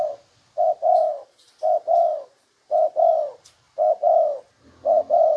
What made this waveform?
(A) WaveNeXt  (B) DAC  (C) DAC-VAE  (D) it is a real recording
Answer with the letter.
D